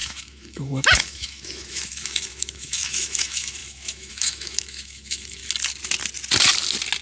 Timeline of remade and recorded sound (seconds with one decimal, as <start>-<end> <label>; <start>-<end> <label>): 0.0-5.4 remade; 5.4-7.0 recorded